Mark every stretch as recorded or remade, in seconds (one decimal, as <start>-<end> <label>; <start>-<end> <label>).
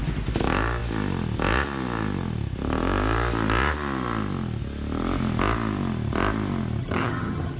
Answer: 0.0-6.8 recorded; 6.8-7.6 remade